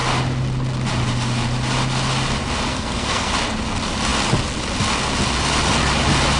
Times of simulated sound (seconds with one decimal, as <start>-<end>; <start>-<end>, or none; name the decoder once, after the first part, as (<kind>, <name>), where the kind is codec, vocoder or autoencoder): 2.7-3.3 (codec, SNAC)